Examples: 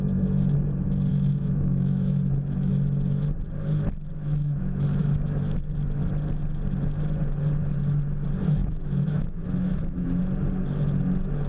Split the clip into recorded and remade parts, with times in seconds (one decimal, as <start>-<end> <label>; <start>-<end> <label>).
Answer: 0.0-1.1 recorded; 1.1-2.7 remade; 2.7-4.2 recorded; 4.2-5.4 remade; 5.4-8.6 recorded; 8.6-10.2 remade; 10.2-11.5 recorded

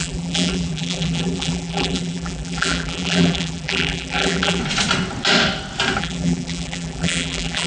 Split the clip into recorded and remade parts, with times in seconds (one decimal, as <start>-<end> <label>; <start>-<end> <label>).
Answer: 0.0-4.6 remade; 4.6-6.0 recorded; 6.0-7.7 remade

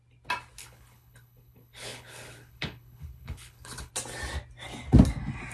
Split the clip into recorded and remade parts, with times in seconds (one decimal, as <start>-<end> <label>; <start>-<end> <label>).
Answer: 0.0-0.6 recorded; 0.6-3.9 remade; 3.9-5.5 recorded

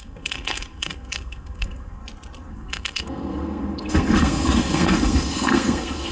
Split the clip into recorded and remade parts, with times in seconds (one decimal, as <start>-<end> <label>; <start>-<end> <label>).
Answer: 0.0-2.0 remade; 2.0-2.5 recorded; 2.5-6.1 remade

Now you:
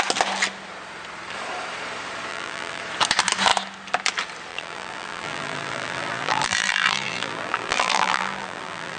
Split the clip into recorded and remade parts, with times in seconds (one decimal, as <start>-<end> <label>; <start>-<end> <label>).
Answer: 0.0-2.3 recorded; 2.3-2.8 remade; 2.8-4.5 recorded; 4.5-9.0 remade